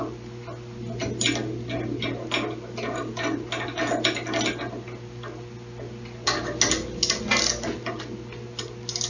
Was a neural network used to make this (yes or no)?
no